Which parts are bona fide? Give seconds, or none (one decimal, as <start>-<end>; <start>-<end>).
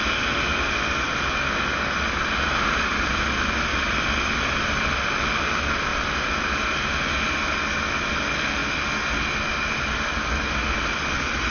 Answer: 0.0-11.5